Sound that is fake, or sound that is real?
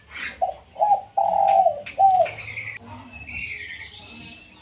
real